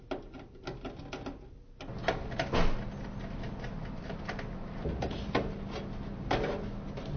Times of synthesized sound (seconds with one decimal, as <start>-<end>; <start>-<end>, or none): 1.5-2.0; 3.8-5.0

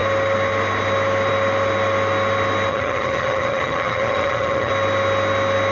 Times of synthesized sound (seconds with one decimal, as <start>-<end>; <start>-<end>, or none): 2.7-4.7

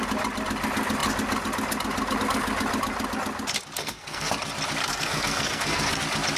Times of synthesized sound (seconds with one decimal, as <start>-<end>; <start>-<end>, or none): 3.8-4.3; 4.8-6.0